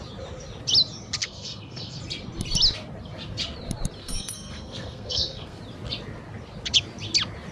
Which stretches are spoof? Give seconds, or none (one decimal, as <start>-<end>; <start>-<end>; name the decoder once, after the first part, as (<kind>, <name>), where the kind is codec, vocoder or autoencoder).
1.2-2.0 (codec, SNAC); 4.0-5.6